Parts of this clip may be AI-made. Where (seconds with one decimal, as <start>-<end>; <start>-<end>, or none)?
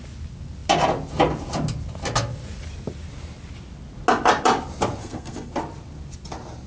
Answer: 5.0-5.5